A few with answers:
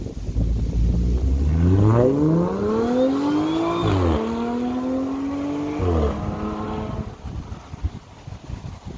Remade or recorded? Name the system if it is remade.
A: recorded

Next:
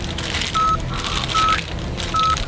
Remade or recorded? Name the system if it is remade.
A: recorded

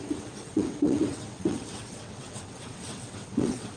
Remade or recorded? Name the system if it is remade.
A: remade, vocoder, WaveNeXt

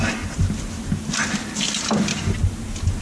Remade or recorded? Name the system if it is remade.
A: recorded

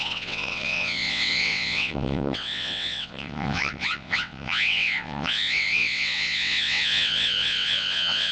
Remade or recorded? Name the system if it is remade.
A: remade, vocoder, WaveNeXt